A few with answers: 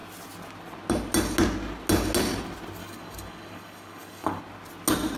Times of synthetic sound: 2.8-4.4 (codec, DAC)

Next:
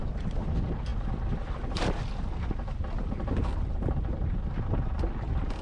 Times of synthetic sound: 0.9-4.3 (vocoder, BigVGAN v2)

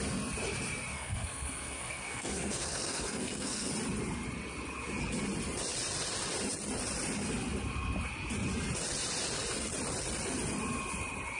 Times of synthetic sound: 0.9-3.7 (codec, SNAC)

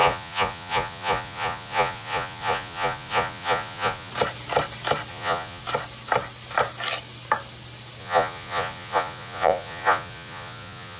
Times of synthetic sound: 0.0-4.1 (vocoder, Vocos); 5.1-5.6; 8.0-11.0

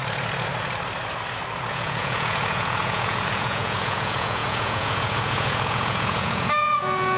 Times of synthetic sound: 1.7-7.2 (vocoder, Vocos)

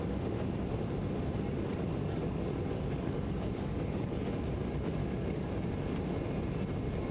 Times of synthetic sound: 2.0-4.2 (codec, DAC); 5.0-5.5

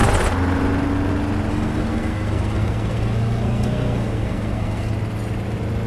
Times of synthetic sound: 1.5-4.9 (codec, SNAC)

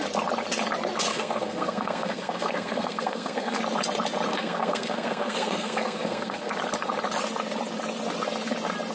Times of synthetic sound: 1.1-3.6 (codec, SNAC); 4.3-6.5